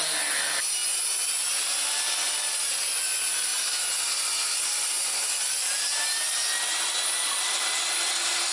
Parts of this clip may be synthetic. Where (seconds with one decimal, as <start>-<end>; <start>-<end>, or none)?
none